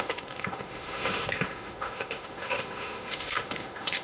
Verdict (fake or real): fake